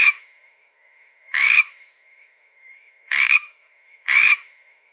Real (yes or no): no